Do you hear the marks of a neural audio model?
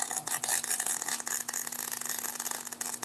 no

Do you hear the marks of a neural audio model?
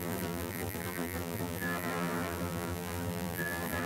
yes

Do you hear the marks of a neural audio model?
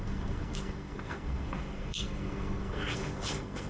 yes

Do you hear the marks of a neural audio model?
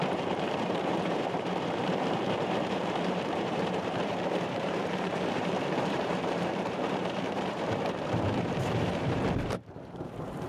yes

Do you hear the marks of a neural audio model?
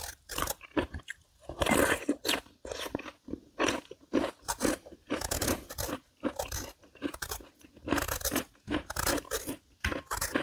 no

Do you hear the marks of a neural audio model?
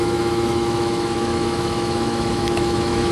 yes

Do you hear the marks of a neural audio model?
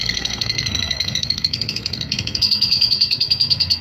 yes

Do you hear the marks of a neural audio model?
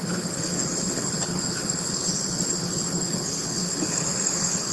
yes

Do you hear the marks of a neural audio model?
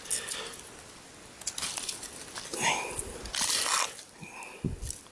no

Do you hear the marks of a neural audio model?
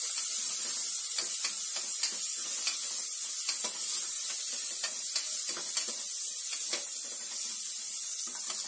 no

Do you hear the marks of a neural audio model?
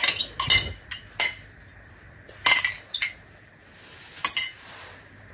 no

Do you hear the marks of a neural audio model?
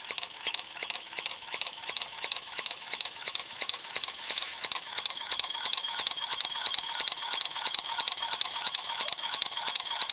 yes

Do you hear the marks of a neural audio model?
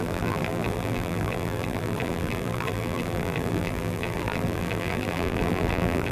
yes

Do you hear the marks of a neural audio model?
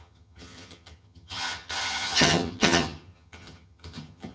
yes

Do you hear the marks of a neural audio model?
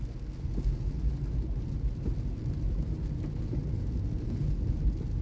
no